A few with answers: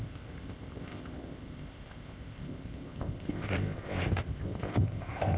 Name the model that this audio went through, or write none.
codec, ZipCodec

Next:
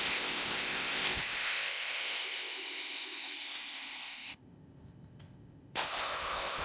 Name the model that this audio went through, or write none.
codec, ZipCodec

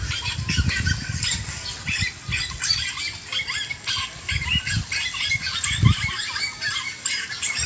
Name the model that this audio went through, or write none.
none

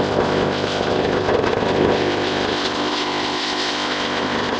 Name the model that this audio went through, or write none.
codec, ZipCodec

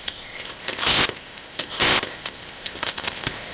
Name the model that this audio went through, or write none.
codec, ZipCodec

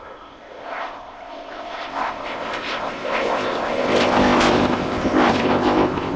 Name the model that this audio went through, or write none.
codec, ZipCodec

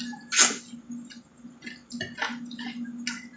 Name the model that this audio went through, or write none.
none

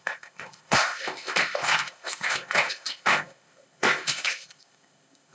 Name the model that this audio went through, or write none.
codec, ZipCodec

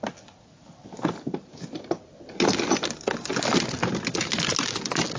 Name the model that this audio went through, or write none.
none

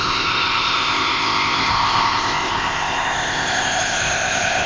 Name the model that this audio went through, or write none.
codec, ZipCodec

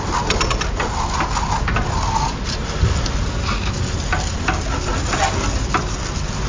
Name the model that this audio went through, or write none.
none